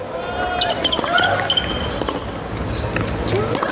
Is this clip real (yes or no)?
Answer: yes